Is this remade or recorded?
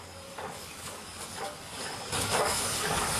remade